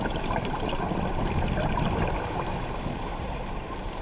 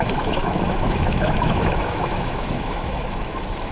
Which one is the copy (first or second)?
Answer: second